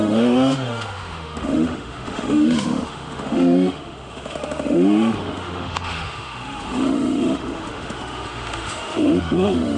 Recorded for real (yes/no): no